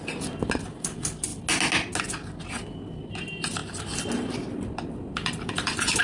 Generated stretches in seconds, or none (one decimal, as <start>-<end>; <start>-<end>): 3.6-6.0